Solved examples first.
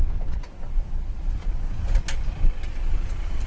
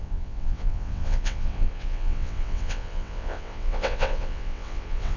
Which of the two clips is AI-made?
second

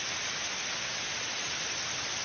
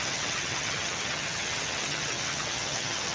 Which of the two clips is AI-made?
second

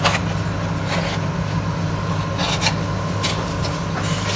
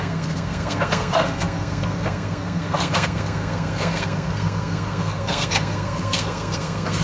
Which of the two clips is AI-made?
second